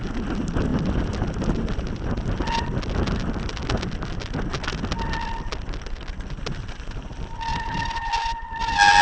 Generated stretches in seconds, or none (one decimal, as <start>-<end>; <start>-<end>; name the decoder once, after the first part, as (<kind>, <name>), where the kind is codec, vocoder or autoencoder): 7.5-8.1 (vocoder, BigVGAN v2)